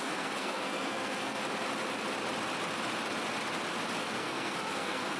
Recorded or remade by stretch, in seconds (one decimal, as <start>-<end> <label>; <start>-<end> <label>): 0.0-1.4 remade; 1.4-4.0 recorded; 4.0-5.2 remade